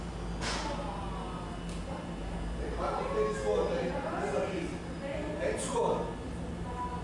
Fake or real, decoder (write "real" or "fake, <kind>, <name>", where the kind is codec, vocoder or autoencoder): real